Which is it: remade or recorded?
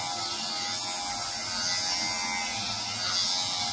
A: recorded